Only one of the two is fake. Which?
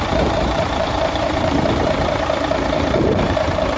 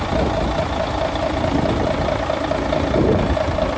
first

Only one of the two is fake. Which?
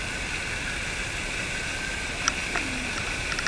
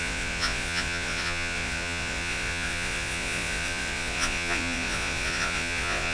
second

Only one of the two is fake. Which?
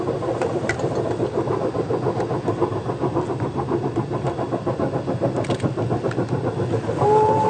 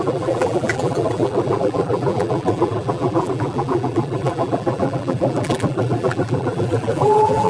second